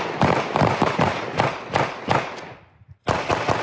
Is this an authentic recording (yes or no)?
yes